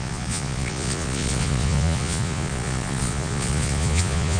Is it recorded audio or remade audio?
remade